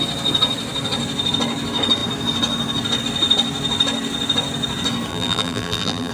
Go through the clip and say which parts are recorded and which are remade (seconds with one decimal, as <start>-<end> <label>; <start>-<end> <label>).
0.0-5.1 recorded; 5.1-6.1 remade